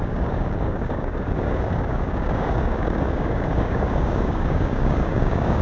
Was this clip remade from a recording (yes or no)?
yes